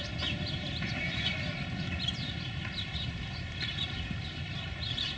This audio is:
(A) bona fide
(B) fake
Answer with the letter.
B